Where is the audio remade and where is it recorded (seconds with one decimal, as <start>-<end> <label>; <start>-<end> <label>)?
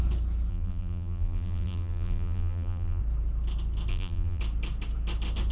0.0-0.5 recorded; 0.5-3.0 remade; 3.0-3.9 recorded; 3.9-4.4 remade; 4.4-5.5 recorded